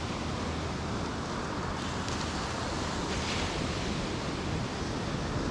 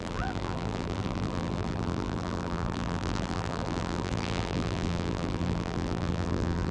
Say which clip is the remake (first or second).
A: second